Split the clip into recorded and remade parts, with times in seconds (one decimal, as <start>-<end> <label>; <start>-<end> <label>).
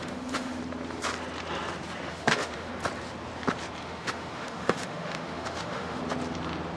0.0-0.6 remade; 0.6-2.1 recorded; 2.1-2.7 remade; 2.7-3.8 recorded; 3.8-6.0 remade; 6.0-6.8 recorded